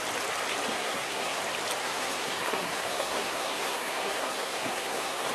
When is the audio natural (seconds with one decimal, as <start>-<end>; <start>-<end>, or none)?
0.0-0.7; 1.4-1.8